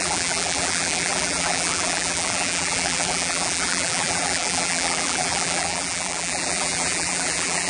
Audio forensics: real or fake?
fake